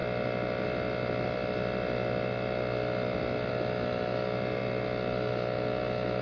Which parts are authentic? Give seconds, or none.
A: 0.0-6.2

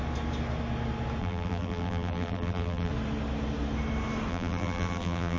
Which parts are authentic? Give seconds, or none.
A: 0.0-1.2; 2.9-4.3